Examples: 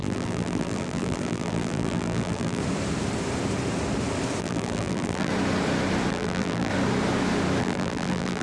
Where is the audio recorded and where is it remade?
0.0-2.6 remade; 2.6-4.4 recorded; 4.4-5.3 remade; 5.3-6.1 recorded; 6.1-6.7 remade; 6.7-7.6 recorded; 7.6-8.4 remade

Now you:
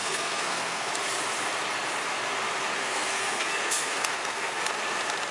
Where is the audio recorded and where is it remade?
0.0-0.9 remade; 0.9-2.8 recorded; 2.8-4.6 remade; 4.6-5.3 recorded

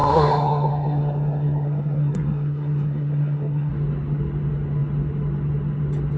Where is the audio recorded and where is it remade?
0.0-3.7 remade; 3.7-6.2 recorded